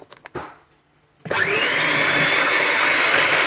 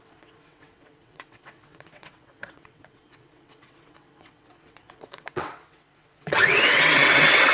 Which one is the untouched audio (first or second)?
first